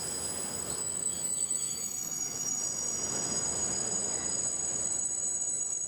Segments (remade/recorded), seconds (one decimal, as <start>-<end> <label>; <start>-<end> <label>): 0.0-0.8 recorded; 0.8-2.6 remade; 2.6-5.9 recorded